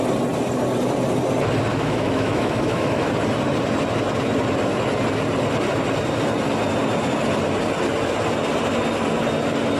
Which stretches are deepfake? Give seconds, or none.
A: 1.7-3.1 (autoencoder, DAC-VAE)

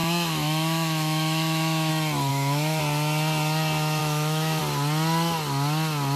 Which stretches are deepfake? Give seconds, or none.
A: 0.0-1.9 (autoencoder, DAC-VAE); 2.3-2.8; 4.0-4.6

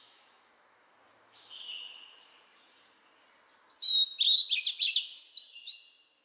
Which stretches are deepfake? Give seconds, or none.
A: 0.0-2.3 (autoencoder, DAC-VAE)

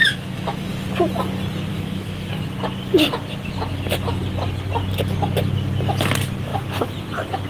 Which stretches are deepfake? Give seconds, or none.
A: 0.0-0.7 (autoencoder, DAC-VAE); 1.7-2.3

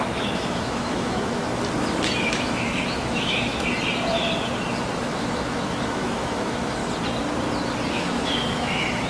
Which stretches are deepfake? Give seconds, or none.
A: 0.0-1.4 (autoencoder, DAC-VAE); 2.2-3.5; 5.0-6.8; 7.9-9.1

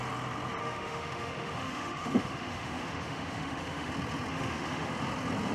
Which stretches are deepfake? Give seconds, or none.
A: 0.6-3.9 (autoencoder, DAC-VAE); 4.3-4.9